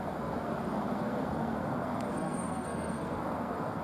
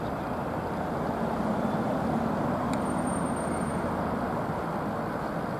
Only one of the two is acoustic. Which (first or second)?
second